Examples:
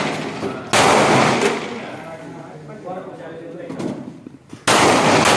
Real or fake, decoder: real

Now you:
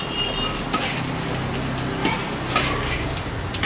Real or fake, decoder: real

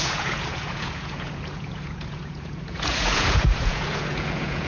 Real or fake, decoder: fake, vocoder, Vocos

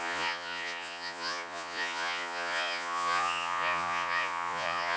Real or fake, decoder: fake, vocoder, Vocos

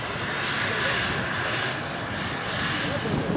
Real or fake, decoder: real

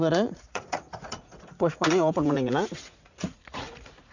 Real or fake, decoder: fake, vocoder, Vocos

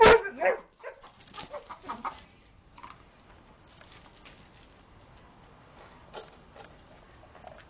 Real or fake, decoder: real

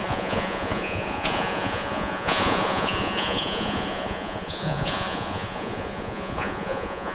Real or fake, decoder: fake, vocoder, Vocos